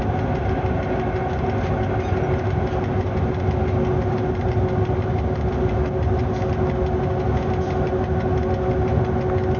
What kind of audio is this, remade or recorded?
recorded